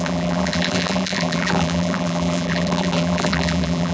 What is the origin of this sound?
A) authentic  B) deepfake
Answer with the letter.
B